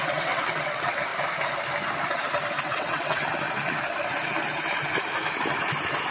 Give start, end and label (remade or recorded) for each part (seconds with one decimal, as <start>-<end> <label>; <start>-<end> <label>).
0.0-1.1 remade; 1.1-2.6 recorded; 2.6-3.2 remade; 3.2-6.1 recorded